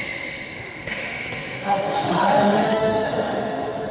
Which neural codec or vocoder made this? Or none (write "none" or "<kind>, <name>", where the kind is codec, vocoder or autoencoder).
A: autoencoder, DAC-VAE